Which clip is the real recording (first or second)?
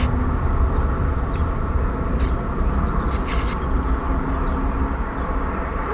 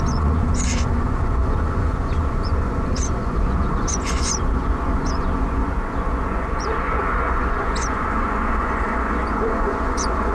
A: first